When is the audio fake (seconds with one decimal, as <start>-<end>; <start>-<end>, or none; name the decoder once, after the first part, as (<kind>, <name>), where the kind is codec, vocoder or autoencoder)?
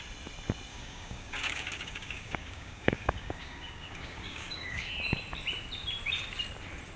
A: 0.7-4.9 (codec, DAC)